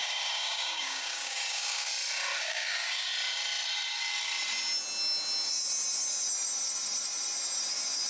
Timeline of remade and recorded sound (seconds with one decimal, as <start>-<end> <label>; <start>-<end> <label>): 0.0-1.9 remade; 1.9-2.4 recorded; 2.4-3.1 remade; 3.1-8.1 recorded